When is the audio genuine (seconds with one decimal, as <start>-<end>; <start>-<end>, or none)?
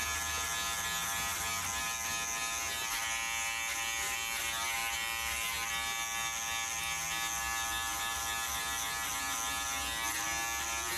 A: 0.0-11.0